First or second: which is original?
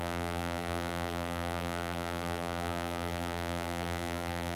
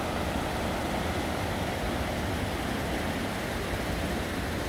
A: second